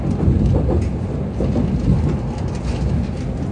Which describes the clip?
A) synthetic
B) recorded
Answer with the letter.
B